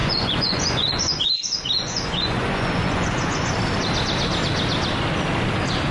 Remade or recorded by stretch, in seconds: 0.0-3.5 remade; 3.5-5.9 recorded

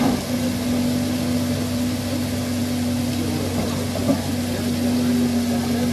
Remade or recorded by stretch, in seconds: 0.0-5.9 recorded

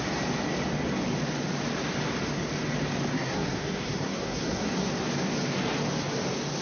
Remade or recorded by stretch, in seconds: 0.0-3.1 recorded; 3.1-4.9 remade; 4.9-6.6 recorded

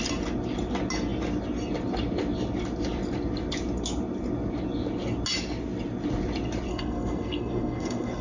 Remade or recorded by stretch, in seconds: 0.0-6.7 recorded; 6.7-8.2 remade

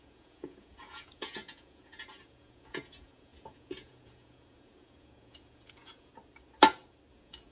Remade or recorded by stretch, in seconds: 0.0-6.1 remade; 6.1-7.1 recorded; 7.1-7.5 remade

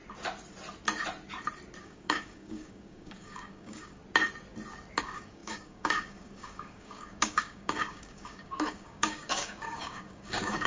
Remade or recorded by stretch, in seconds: 0.0-1.8 recorded; 1.8-4.0 remade; 4.0-5.0 recorded; 5.0-10.7 remade